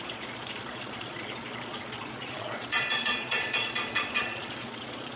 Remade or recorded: remade